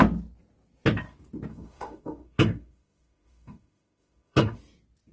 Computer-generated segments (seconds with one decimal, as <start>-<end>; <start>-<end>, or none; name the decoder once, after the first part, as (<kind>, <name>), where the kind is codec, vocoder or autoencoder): 1.5-4.6 (autoencoder, DAC-VAE)